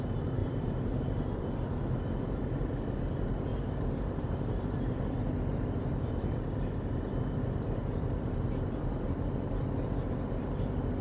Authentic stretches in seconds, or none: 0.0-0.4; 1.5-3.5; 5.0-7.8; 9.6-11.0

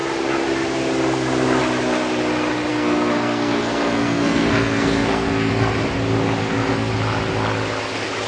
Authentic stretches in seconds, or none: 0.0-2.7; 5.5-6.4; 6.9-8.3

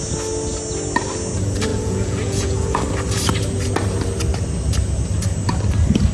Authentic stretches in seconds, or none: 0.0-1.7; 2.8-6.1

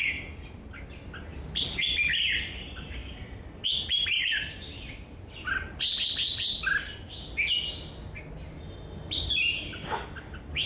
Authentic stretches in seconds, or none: 5.9-8.4